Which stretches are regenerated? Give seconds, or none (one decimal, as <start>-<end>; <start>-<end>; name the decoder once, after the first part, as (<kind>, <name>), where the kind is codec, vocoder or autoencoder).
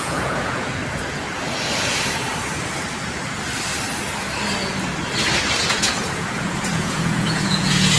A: 0.0-0.8 (vocoder, Vocos); 5.6-8.0